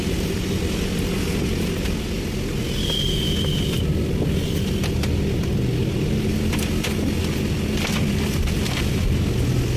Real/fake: real